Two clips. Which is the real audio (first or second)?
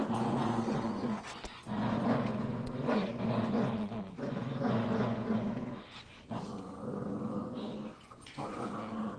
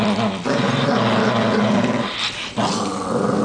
second